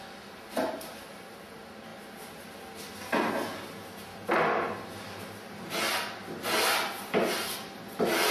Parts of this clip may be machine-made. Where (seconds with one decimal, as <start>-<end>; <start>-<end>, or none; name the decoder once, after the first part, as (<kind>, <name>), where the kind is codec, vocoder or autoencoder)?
none